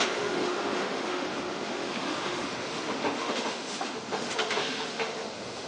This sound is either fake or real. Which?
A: fake